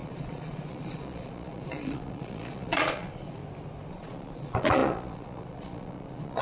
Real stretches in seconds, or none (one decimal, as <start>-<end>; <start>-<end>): 3.4-3.9